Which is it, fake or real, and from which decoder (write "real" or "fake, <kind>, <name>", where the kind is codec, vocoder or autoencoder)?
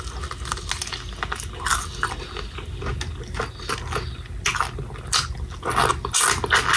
real